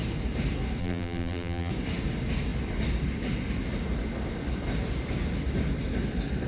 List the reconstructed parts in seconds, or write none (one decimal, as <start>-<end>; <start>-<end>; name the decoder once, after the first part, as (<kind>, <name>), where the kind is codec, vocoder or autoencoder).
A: 0.8-1.7 (vocoder, BigVGAN v2)